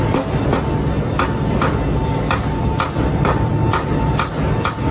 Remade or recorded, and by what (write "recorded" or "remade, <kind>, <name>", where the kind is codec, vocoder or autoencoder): recorded